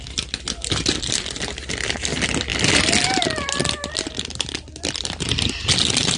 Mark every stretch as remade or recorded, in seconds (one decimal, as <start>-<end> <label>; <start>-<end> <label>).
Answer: 0.0-6.2 recorded